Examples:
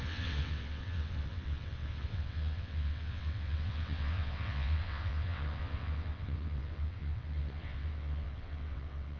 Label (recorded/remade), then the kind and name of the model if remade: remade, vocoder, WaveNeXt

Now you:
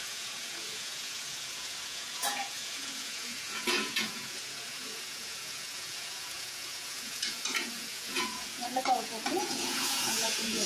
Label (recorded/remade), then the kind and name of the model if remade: remade, vocoder, Vocos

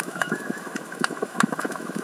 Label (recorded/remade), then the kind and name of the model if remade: remade, autoencoder, DAC-VAE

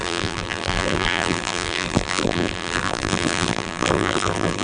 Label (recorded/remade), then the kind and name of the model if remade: remade, vocoder, BigVGAN v2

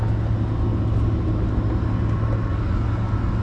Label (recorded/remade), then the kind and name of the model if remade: recorded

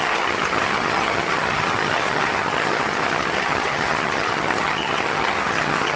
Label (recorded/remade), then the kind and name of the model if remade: remade, vocoder, HiFi-GAN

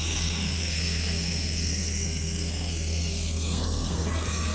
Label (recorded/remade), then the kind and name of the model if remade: remade, codec, SNAC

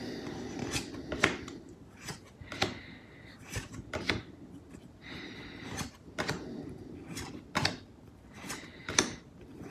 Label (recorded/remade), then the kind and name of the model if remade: recorded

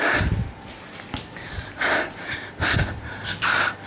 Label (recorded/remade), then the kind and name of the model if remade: recorded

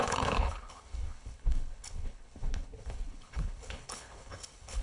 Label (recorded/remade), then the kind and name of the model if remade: remade, codec, HILCodec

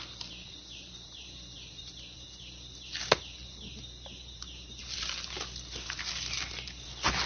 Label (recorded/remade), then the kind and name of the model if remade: recorded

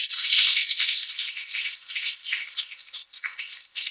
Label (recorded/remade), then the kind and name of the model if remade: remade, codec, ZipCodec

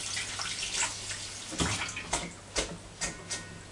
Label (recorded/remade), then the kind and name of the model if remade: recorded